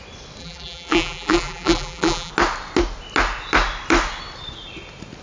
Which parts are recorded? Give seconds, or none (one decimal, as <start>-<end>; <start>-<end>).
0.0-0.4; 2.3-5.2